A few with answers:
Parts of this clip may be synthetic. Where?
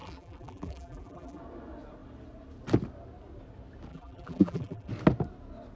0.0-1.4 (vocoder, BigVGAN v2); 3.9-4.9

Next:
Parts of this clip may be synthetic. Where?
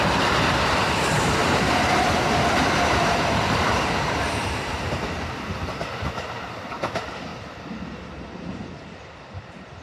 1.4-5.0 (vocoder, BigVGAN v2)